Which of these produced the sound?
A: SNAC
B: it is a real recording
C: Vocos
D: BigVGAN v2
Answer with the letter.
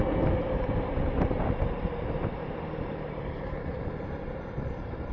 D